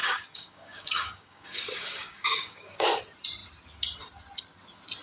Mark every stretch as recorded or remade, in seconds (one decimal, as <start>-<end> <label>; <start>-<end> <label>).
0.0-3.0 remade; 3.0-5.0 recorded